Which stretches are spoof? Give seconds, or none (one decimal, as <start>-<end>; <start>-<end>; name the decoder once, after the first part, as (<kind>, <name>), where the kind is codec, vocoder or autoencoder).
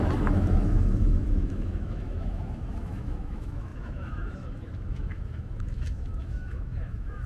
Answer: 0.0-7.3 (autoencoder, DAC-VAE)